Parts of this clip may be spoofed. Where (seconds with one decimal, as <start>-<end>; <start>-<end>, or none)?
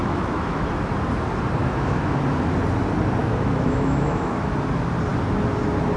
0.0-0.6; 1.6-2.2; 3.2-4.5